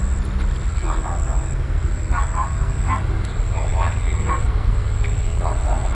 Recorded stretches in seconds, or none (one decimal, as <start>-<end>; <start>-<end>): 0.0-0.7